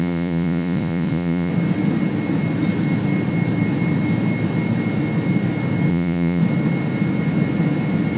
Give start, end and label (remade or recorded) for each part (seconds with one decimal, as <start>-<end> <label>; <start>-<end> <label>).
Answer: 0.0-1.5 remade; 1.5-5.9 recorded; 5.9-6.4 remade; 6.4-8.2 recorded

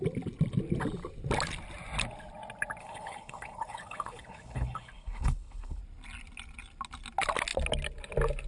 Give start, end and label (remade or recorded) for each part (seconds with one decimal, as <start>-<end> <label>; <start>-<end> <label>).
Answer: 0.0-2.8 recorded; 2.8-5.8 remade; 5.8-8.5 recorded

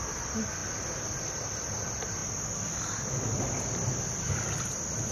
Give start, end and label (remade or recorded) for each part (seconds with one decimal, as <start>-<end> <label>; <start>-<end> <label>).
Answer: 0.0-5.1 recorded

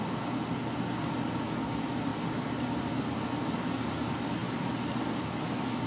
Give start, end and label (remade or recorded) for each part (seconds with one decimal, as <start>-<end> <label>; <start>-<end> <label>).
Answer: 0.0-5.9 recorded

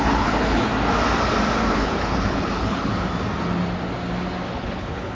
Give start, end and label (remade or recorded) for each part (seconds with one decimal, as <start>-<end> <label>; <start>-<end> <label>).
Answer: 0.0-0.7 remade; 0.7-1.7 recorded; 1.7-2.9 remade; 2.9-4.5 recorded; 4.5-5.1 remade

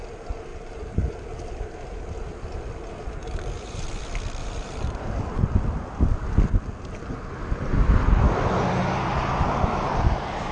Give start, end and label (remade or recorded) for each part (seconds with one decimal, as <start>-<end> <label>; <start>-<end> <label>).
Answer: 0.0-0.5 recorded; 0.5-1.2 remade; 1.2-3.2 recorded; 3.2-3.8 remade; 3.8-4.4 recorded; 4.4-5.3 remade; 5.3-10.5 recorded

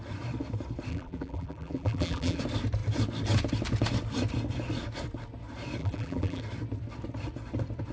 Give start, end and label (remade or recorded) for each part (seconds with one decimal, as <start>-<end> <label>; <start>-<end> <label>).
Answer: 0.0-0.9 recorded; 0.9-2.4 remade; 2.4-5.8 recorded; 5.8-6.4 remade; 6.4-7.9 recorded

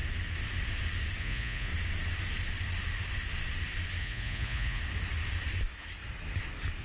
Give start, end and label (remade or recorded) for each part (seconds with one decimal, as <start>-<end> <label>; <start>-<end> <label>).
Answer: 0.0-1.2 recorded; 1.2-1.7 remade; 1.7-4.0 recorded; 4.0-4.8 remade; 4.8-6.8 recorded